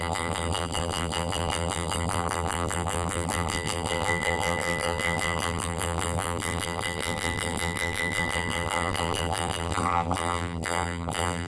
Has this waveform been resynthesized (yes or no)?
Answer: yes